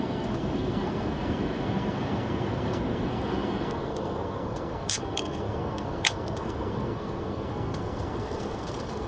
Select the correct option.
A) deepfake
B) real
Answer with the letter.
A